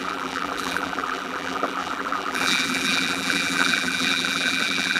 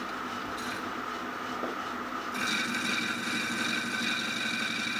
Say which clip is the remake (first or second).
first